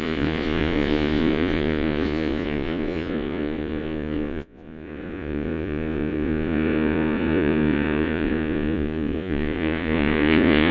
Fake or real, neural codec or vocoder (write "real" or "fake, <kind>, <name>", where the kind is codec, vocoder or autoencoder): fake, vocoder, Vocos